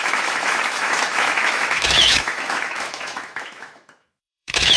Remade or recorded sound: remade